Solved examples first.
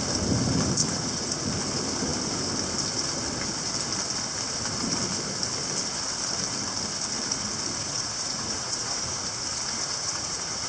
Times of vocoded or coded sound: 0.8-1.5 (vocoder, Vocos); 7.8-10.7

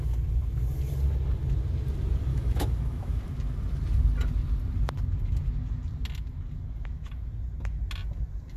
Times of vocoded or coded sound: 2.3-3.2 (autoencoder, DAC-VAE)

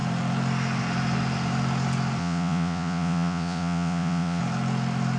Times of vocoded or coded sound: 2.2-4.4 (vocoder, Vocos)

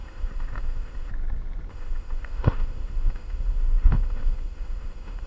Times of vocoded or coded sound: 0.0-1.1 (autoencoder, DAC-VAE); 1.7-5.3

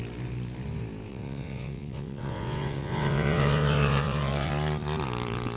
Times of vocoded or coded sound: 1.1-4.5 (vocoder, WaveNeXt)